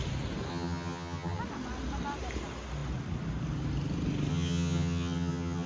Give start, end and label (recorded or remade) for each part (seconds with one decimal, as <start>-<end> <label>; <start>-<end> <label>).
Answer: 0.0-0.5 recorded; 0.5-1.4 remade; 1.4-4.3 recorded; 4.3-5.7 remade

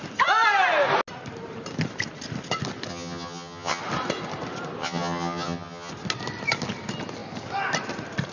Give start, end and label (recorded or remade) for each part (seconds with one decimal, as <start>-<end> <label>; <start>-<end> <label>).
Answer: 0.0-2.9 recorded; 2.9-3.8 remade; 3.8-4.8 recorded; 4.8-5.9 remade; 5.9-8.3 recorded

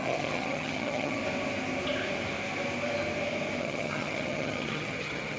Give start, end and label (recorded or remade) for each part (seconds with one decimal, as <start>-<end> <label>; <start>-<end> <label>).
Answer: 0.0-1.2 remade; 1.2-3.6 recorded; 3.6-5.4 remade

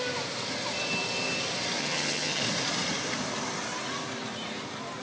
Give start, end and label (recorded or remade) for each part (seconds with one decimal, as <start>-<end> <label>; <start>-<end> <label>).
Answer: 0.0-1.8 recorded; 1.8-2.4 remade; 2.4-5.0 recorded

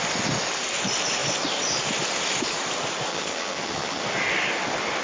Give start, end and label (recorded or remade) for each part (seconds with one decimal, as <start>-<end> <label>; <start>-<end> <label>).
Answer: 0.0-3.1 recorded; 3.1-4.0 remade; 4.0-5.0 recorded

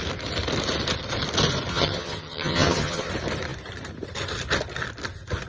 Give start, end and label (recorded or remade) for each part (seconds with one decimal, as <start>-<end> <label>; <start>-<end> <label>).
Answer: 0.0-1.7 recorded; 1.7-3.1 remade; 3.1-5.5 recorded

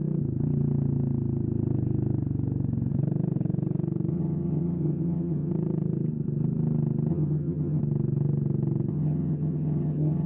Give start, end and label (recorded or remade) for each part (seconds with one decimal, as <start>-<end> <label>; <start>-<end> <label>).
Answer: 0.0-4.1 recorded; 4.1-5.5 remade; 5.5-7.1 recorded; 7.1-7.8 remade; 7.8-8.9 recorded; 8.9-10.3 remade